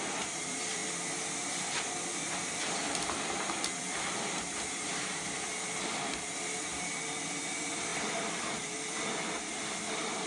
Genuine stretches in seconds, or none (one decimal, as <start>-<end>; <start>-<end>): 0.8-2.5; 6.7-7.4